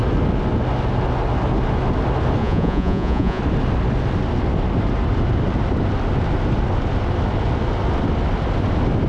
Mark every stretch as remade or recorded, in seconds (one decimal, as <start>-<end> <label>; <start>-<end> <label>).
0.0-2.4 recorded; 2.4-3.4 remade; 3.4-9.1 recorded